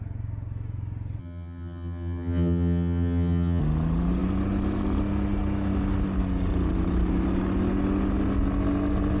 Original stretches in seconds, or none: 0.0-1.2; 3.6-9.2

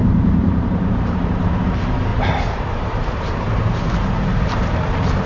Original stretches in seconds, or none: 1.6-2.1

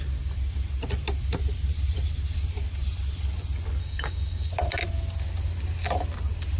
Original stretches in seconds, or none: 0.0-3.8; 4.5-6.6